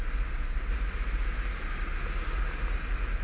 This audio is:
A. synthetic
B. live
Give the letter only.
B